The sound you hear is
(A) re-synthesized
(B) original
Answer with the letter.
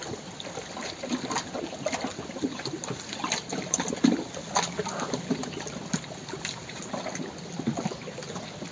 B